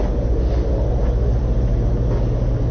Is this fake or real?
real